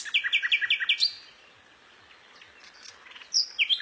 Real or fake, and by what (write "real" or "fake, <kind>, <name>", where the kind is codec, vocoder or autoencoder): real